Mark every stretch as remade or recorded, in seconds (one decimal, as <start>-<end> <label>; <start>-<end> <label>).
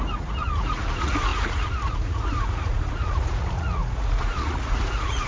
0.0-5.3 remade